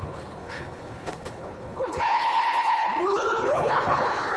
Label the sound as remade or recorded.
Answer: remade